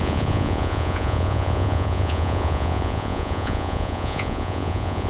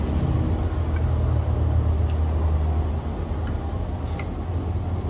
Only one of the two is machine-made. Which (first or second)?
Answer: first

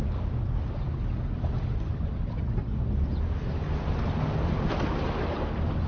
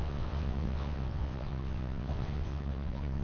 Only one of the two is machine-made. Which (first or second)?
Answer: second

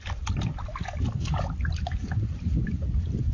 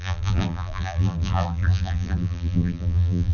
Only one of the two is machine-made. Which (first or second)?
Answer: second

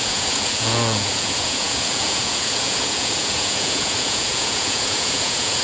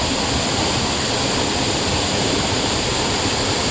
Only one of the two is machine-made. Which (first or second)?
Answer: first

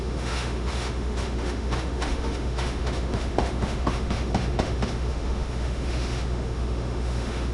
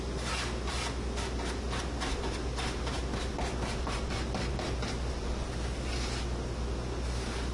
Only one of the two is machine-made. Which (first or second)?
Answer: first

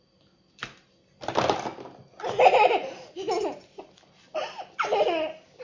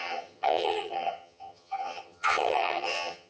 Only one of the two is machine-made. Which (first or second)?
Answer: second